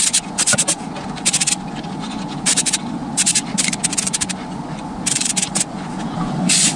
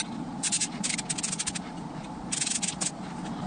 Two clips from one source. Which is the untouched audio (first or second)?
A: second